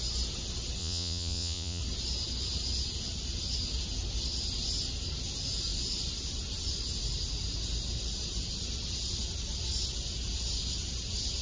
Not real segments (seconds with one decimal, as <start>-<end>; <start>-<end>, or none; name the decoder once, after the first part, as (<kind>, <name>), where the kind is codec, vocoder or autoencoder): 0.8-1.8 (vocoder, Vocos)